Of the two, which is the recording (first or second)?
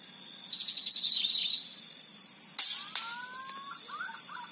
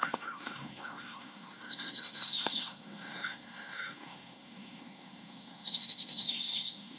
first